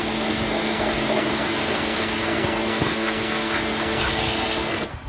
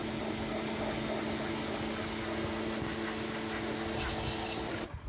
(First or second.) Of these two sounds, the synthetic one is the first